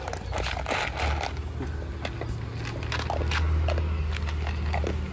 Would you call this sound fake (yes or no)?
no